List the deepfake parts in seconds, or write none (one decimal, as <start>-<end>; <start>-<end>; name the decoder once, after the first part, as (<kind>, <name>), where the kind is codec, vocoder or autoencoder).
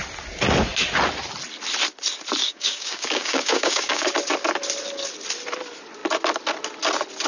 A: 2.4-4.1 (codec, DAC)